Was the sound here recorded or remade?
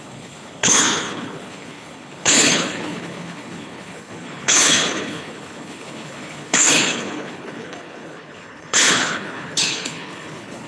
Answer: remade